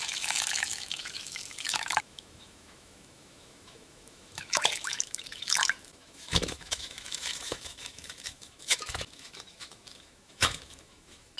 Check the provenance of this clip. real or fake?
fake